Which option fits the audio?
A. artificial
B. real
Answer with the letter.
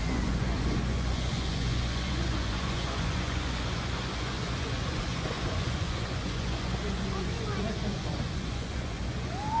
A